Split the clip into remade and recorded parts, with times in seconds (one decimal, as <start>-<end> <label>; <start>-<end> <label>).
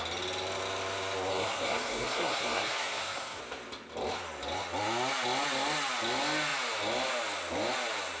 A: 0.0-1.3 recorded; 1.3-3.4 remade; 3.4-8.2 recorded